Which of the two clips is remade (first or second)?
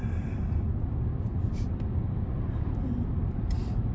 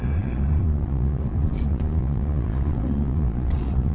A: second